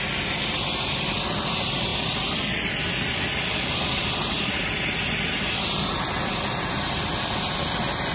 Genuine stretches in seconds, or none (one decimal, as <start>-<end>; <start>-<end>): 0.0-1.9; 6.8-8.1